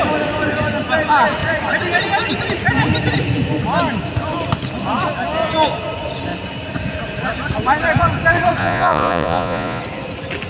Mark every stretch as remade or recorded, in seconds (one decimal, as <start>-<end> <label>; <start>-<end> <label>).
0.0-8.6 recorded; 8.6-9.8 remade; 9.8-10.5 recorded